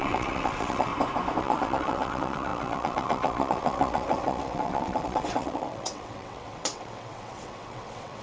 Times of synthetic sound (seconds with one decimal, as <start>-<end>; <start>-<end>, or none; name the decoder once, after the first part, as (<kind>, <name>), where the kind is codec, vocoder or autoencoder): 0.0-0.9 (vocoder, WaveNeXt); 1.4-8.2